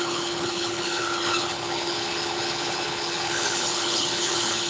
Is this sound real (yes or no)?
no